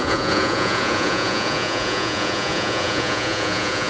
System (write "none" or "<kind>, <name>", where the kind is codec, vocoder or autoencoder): vocoder, Vocos